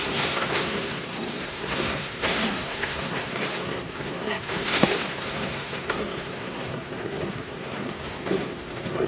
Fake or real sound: fake